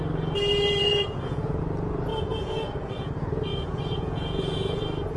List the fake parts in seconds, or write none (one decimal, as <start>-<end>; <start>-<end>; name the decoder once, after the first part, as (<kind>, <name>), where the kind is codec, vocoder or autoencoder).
0.5-1.6 (vocoder, Vocos); 2.1-3.1; 3.5-4.8